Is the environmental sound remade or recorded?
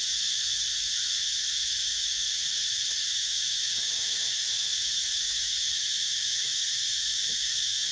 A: remade